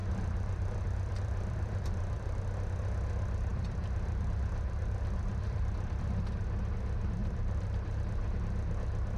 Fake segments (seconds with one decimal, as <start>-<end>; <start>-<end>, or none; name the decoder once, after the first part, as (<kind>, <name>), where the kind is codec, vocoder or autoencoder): 0.0-2.4 (vocoder, BigVGAN v2); 3.5-6.0; 7.2-8.4